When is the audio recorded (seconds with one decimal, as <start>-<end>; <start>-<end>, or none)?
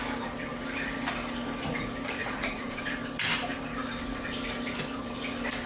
0.0-2.2; 2.8-5.7